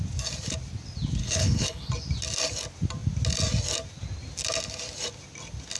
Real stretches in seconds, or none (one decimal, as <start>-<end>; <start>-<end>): 0.0-1.2; 1.9-5.8